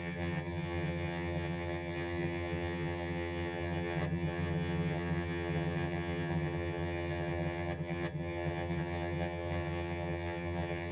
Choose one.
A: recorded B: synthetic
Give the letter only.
B